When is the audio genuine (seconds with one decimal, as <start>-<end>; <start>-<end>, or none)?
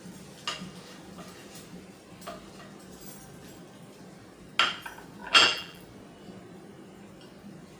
0.0-5.2; 5.8-7.8